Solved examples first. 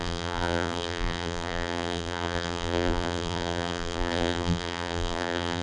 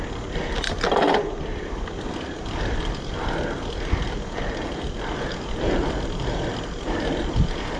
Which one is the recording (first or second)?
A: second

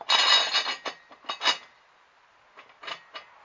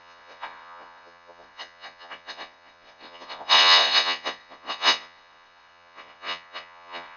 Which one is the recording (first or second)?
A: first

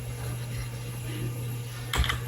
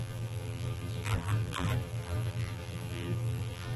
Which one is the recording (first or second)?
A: first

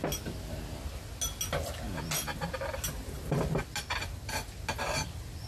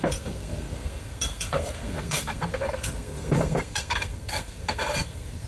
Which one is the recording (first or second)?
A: first